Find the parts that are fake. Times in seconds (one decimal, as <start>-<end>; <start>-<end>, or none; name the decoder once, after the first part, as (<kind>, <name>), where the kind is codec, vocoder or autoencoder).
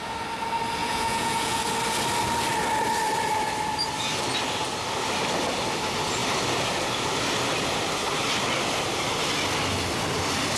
0.8-1.6 (vocoder, Vocos)